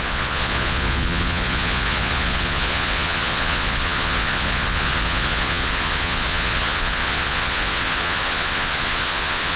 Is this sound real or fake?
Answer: fake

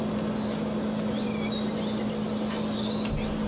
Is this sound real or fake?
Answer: real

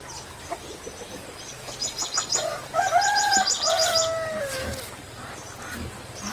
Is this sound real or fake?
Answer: fake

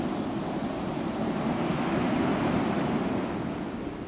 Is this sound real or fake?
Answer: real